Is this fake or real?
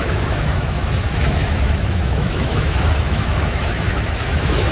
fake